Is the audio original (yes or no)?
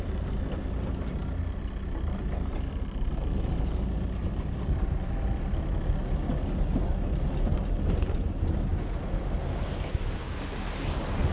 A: yes